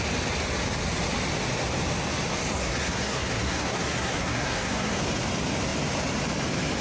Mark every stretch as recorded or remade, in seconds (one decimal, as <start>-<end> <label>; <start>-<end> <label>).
0.0-2.6 recorded; 2.6-5.0 remade; 5.0-6.8 recorded